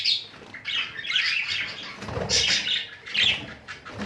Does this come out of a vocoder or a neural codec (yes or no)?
no